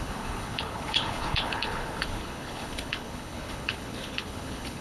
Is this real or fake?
fake